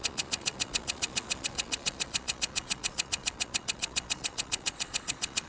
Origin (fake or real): fake